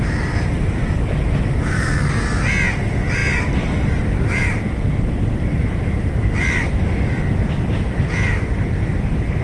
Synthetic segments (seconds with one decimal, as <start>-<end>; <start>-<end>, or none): none